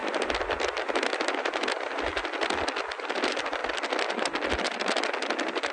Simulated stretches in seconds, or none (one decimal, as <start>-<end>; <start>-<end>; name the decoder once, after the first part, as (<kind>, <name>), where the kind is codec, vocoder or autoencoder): none